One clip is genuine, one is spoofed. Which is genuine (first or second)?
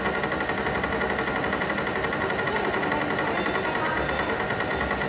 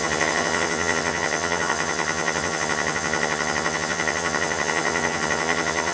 first